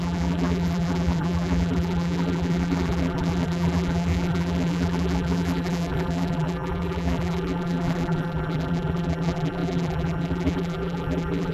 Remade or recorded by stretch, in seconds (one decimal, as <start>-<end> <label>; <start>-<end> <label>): 0.0-11.5 remade